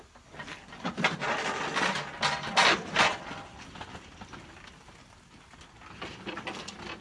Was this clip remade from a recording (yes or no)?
no